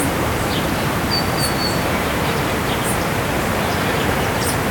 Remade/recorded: remade